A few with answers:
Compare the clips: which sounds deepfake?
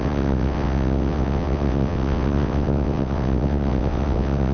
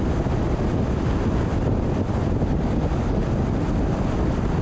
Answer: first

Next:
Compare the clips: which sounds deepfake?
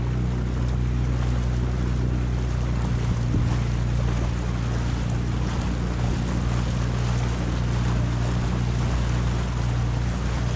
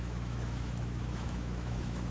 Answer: second